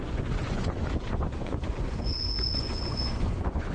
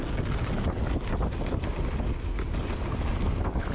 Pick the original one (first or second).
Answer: second